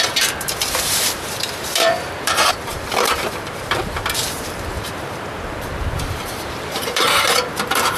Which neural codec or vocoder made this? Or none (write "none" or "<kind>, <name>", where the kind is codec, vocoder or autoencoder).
vocoder, BigVGAN v2